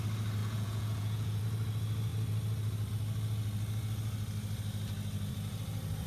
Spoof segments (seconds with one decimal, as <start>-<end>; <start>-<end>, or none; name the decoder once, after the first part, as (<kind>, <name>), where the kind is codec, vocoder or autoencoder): 0.4-1.4 (vocoder, Vocos)